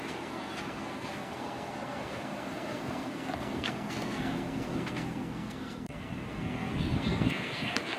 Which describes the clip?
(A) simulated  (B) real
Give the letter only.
A